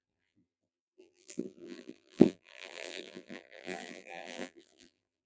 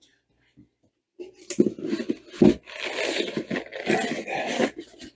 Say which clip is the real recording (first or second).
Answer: second